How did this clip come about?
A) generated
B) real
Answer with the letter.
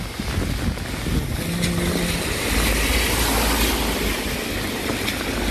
B